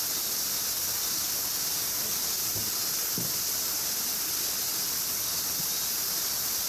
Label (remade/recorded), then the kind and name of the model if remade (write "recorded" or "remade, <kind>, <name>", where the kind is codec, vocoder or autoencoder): recorded